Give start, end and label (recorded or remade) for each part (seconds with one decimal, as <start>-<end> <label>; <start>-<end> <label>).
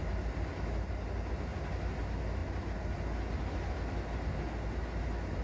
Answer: 0.0-5.4 recorded